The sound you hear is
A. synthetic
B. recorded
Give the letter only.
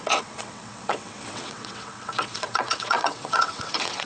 A